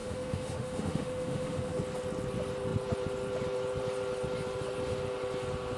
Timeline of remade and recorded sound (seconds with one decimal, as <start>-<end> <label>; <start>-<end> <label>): 0.0-1.8 remade; 1.8-5.8 recorded